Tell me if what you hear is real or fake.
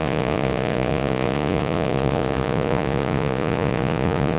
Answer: fake